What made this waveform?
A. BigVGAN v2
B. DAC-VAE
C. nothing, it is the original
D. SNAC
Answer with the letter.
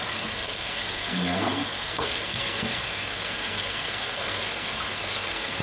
D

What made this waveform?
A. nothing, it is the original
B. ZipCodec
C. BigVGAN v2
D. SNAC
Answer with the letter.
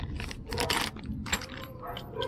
A